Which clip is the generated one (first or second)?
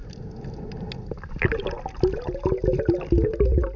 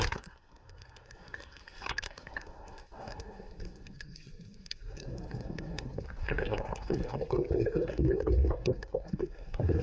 second